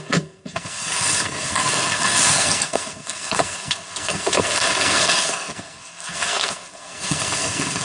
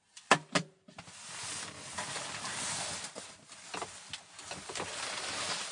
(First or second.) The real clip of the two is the second